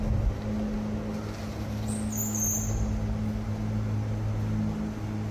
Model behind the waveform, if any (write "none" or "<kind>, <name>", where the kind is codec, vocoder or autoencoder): none